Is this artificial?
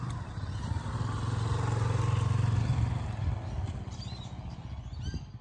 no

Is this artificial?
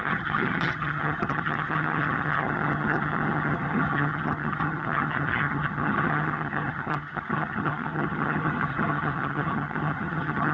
yes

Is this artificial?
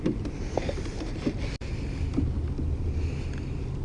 no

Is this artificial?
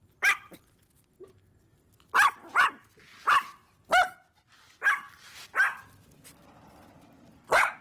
no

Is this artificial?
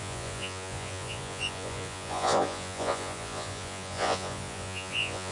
yes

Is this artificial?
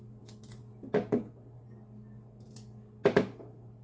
no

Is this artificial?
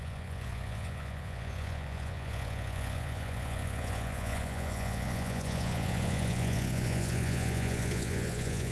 yes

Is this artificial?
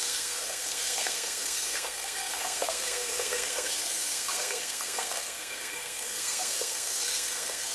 yes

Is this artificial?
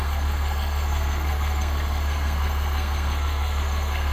yes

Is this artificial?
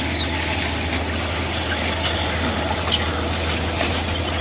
no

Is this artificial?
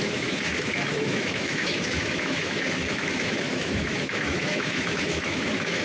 yes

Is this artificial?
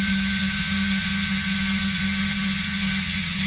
yes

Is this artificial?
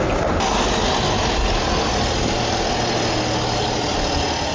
no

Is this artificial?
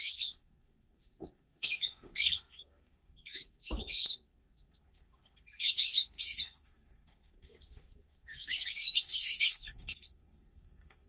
yes